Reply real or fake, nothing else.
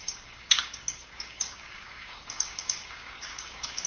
fake